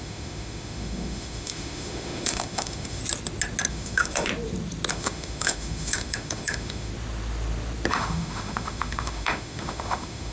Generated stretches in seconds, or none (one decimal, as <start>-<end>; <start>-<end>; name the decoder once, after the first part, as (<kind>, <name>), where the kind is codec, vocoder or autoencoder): 0.0-3.0 (autoencoder, DAC-VAE); 3.7-4.3; 4.9-6.9; 7.9-10.3